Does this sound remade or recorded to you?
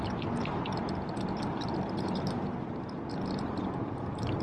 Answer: remade